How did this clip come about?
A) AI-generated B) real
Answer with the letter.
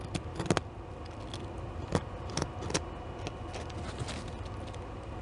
B